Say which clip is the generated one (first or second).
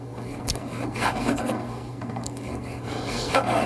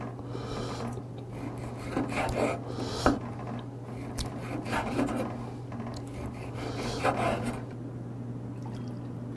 first